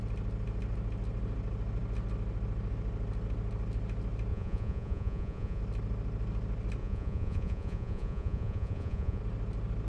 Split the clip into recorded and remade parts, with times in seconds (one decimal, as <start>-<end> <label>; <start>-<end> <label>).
0.0-4.3 recorded; 4.3-5.6 remade; 5.6-6.8 recorded; 6.8-9.2 remade; 9.2-9.9 recorded